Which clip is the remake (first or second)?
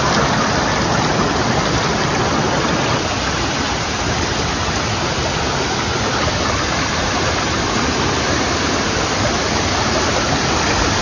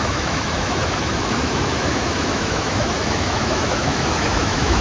second